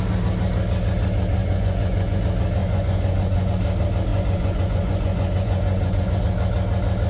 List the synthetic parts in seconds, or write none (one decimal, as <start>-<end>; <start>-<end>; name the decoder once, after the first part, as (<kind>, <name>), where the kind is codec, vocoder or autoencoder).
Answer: 1.4-2.2 (vocoder, Vocos); 2.6-3.5; 4.1-6.2